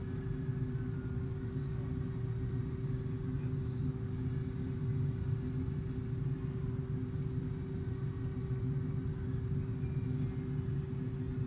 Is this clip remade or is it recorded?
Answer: recorded